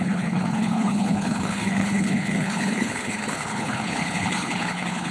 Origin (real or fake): fake